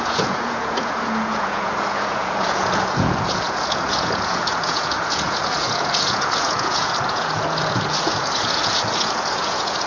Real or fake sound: fake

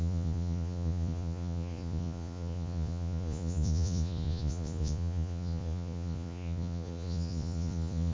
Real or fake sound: fake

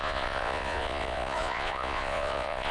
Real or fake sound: fake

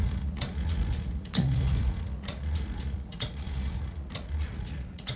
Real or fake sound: fake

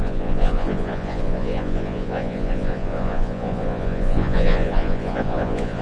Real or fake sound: fake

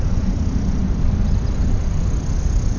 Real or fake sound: real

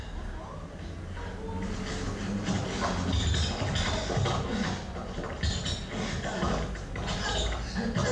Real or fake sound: real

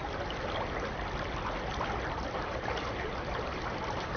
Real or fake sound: real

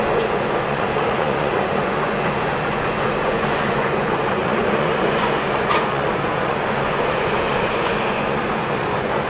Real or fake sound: fake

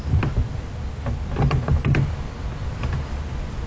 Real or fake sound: real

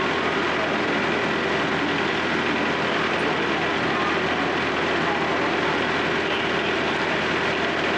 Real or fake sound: real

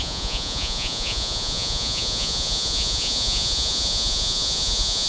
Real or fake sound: fake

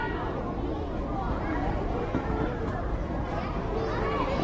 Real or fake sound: real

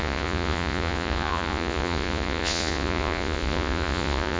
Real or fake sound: fake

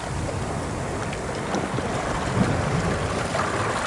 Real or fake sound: real